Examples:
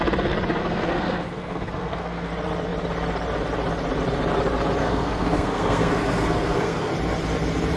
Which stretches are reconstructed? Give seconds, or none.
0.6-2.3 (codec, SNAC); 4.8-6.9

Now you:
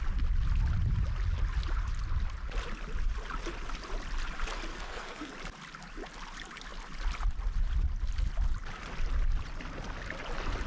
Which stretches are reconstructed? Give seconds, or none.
4.7-5.3 (codec, SNAC)

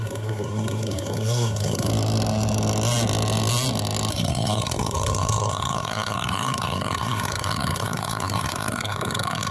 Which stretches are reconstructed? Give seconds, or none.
0.0-1.9 (codec, SNAC); 4.1-9.5

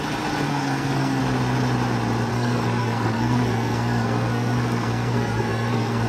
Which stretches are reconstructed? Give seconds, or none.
0.5-1.2 (codec, SNAC); 2.3-6.1

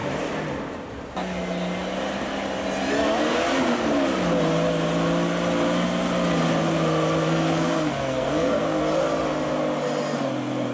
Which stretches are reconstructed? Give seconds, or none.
7.2-8.8 (codec, SNAC)

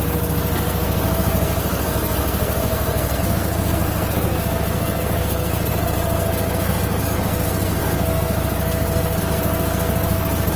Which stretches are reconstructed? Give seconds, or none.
0.0-10.6 (codec, SNAC)

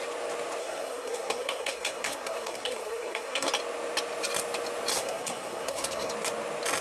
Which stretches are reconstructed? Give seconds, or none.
0.6-3.5 (codec, SNAC); 4.9-6.1